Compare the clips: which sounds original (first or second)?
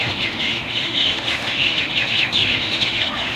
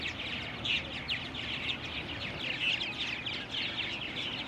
second